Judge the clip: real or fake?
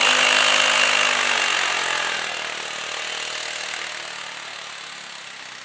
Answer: real